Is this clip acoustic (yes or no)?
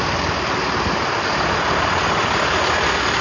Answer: yes